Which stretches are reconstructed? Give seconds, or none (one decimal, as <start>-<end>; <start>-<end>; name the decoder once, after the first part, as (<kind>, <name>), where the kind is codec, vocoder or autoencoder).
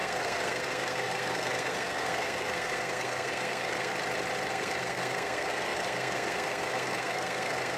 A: 0.0-3.9 (codec, SNAC); 4.5-7.8